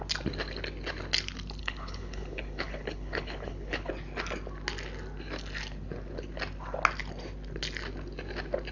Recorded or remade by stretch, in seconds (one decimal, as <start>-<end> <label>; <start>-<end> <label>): 0.0-1.6 recorded; 1.6-3.9 remade; 3.9-8.7 recorded